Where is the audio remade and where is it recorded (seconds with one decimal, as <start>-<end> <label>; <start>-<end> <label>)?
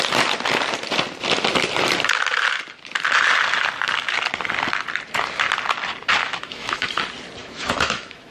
0.0-6.2 recorded; 6.2-6.9 remade; 6.9-7.4 recorded; 7.4-8.3 remade